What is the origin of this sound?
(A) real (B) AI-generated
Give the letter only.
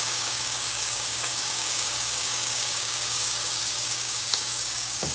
B